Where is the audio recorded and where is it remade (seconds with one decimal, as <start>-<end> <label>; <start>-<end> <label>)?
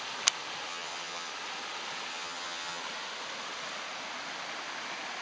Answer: 0.0-0.7 recorded; 0.7-1.3 remade; 1.3-2.1 recorded; 2.1-2.8 remade; 2.8-5.2 recorded